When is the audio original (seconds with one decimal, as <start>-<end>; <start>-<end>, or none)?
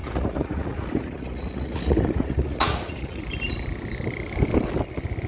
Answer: 3.2-5.3